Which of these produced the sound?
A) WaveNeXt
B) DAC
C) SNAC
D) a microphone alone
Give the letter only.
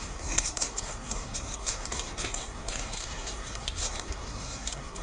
C